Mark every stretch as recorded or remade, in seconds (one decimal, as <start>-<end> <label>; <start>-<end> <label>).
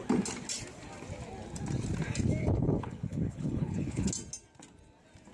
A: 0.0-2.4 recorded; 2.4-4.1 remade; 4.1-5.3 recorded